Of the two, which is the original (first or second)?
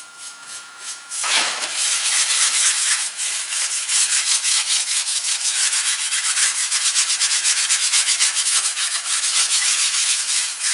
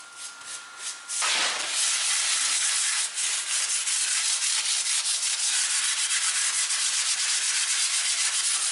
second